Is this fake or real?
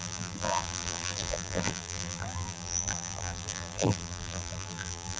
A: fake